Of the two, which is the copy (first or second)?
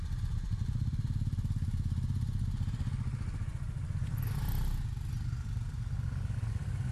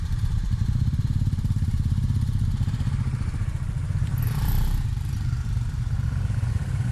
second